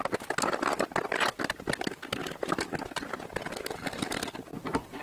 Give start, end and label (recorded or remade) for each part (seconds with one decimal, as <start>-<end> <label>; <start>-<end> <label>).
0.0-5.0 recorded